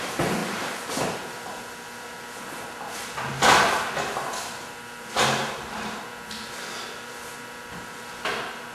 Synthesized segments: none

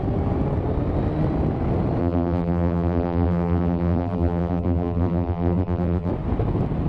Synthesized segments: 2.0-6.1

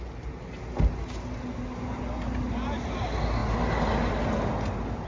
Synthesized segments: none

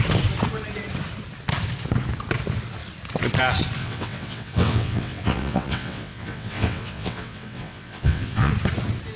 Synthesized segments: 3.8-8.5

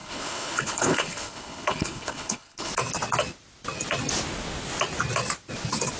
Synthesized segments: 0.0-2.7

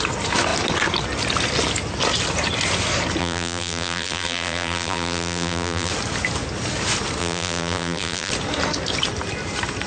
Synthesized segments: 3.2-5.9; 7.2-8.3

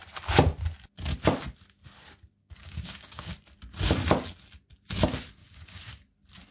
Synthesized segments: 2.4-3.3; 5.4-5.9

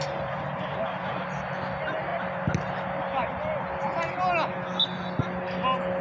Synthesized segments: none